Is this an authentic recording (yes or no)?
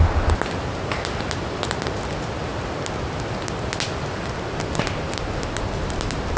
yes